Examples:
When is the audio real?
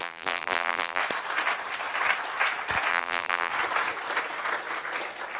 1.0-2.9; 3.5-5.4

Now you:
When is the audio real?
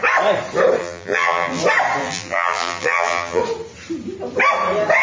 0.0-0.8; 1.6-2.0; 3.4-5.0